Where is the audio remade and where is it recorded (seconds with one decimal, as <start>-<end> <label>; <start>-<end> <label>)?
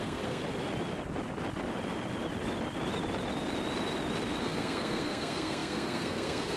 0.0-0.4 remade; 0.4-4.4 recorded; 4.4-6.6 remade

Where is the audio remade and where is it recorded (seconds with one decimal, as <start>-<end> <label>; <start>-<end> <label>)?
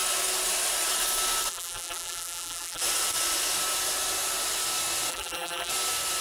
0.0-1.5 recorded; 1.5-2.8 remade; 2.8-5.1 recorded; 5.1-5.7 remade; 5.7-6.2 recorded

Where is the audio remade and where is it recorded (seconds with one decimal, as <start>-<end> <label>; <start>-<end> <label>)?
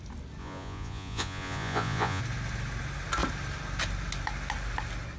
0.0-0.4 recorded; 0.4-2.2 remade; 2.2-5.2 recorded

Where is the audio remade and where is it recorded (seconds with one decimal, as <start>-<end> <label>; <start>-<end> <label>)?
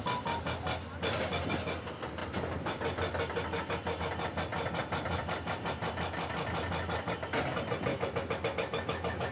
0.0-7.9 recorded; 7.9-9.3 remade